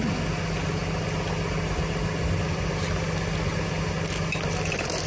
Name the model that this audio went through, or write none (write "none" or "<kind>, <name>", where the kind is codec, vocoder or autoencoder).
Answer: none